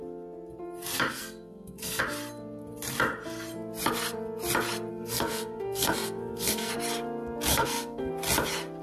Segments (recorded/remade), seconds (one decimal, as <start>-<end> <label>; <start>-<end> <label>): 0.0-1.1 recorded; 1.1-2.0 remade; 2.0-4.9 recorded; 4.9-6.7 remade; 6.7-7.5 recorded; 7.5-8.1 remade; 8.1-8.8 recorded